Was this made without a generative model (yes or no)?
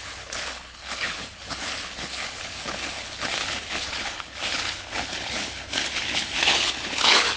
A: no